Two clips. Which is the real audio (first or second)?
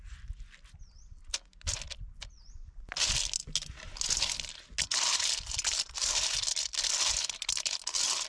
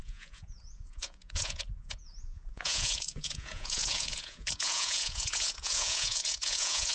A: first